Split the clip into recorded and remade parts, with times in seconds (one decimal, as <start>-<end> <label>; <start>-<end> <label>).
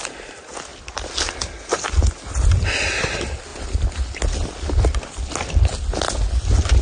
0.0-6.8 recorded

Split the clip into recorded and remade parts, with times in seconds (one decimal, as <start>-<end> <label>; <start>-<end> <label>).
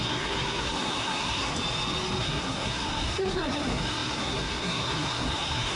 0.0-1.5 remade; 1.5-2.2 recorded; 2.2-5.8 remade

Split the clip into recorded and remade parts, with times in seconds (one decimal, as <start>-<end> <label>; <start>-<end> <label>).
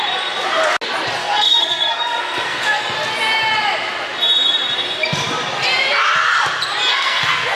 0.0-1.2 recorded; 1.2-2.8 remade; 2.8-6.9 recorded; 6.9-7.6 remade